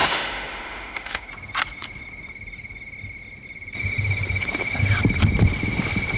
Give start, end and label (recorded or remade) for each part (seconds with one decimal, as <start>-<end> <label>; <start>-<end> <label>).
0.0-1.3 remade; 1.3-6.2 recorded